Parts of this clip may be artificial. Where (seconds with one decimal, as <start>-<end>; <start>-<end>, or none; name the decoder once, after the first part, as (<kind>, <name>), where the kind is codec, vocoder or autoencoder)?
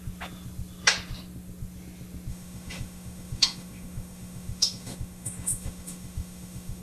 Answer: 2.3-6.8 (autoencoder, DAC-VAE)